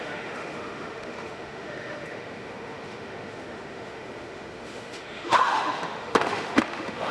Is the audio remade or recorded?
remade